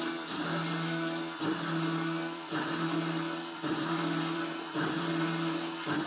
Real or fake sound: fake